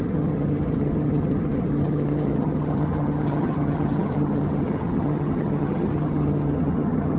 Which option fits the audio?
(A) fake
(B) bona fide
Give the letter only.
A